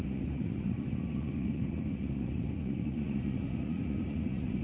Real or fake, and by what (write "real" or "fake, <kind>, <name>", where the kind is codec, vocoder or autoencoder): fake, vocoder, Vocos